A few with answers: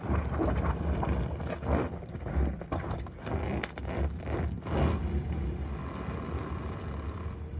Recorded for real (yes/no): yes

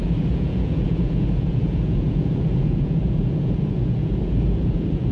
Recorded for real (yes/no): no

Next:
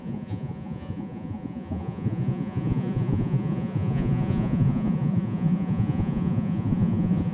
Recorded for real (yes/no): no